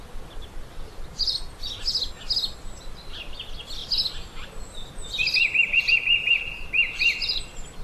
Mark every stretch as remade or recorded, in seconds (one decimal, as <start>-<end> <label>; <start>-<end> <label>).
0.0-7.8 recorded